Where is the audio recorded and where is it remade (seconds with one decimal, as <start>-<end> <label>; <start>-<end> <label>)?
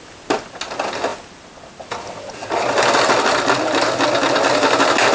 0.0-5.1 recorded